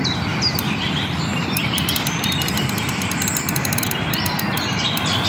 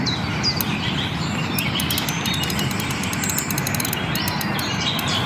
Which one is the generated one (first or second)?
first